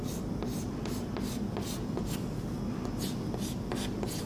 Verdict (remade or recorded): recorded